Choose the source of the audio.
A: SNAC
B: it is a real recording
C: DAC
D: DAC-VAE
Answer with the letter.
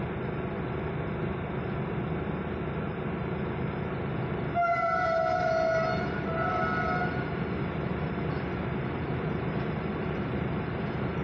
B